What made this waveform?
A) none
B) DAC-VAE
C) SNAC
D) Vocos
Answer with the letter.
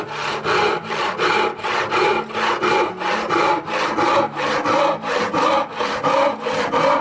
A